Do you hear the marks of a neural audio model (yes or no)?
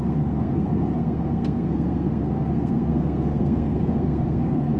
yes